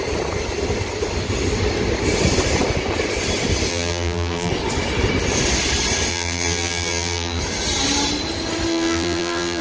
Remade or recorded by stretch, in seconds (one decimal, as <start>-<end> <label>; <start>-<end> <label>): 0.0-3.7 recorded; 3.7-4.5 remade; 4.5-6.1 recorded; 6.1-7.4 remade; 7.4-8.7 recorded; 8.7-9.6 remade